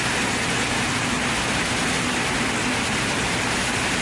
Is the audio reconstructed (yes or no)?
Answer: no